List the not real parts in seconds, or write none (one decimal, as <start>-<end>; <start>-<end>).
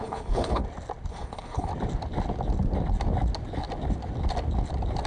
0.0-0.6; 1.1-1.7